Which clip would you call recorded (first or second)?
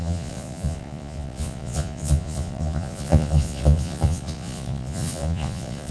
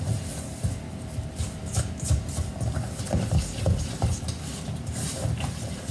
second